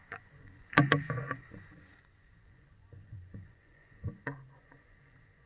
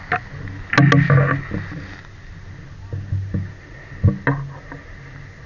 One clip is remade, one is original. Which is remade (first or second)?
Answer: first